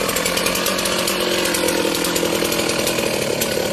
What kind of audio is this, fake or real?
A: real